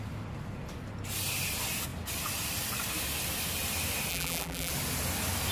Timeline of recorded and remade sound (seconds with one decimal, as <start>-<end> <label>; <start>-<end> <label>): 0.0-4.1 recorded; 4.1-4.7 remade; 4.7-5.5 recorded